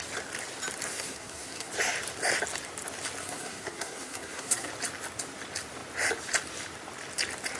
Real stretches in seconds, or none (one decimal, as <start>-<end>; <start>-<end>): 0.0-0.9; 1.7-3.2; 4.7-7.6